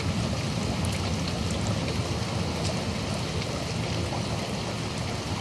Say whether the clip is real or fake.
real